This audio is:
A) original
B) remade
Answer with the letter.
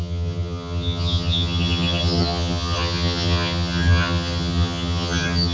B